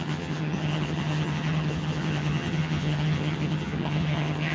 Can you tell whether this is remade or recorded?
remade